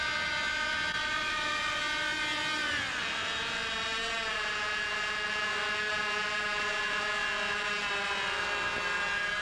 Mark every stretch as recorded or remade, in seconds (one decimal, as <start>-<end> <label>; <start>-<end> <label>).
0.0-1.0 recorded; 1.0-1.8 remade; 1.8-3.0 recorded; 3.0-7.8 remade; 7.8-9.4 recorded